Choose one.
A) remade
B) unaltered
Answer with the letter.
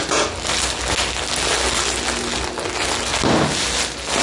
B